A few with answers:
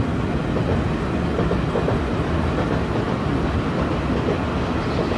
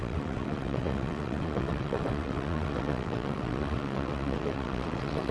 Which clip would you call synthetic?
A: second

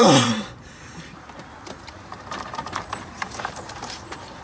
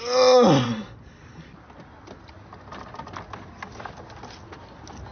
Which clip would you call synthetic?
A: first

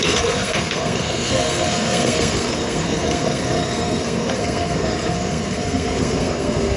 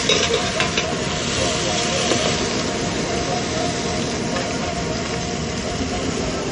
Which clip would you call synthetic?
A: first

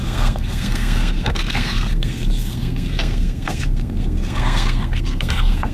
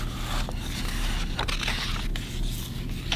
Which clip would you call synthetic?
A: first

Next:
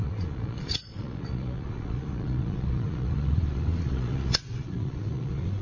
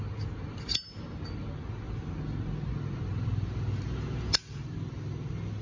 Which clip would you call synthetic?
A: first